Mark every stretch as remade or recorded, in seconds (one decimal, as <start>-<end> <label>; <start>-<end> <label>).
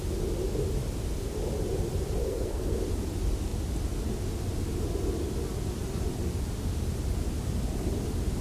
0.0-2.2 recorded; 2.2-2.8 remade; 2.8-8.4 recorded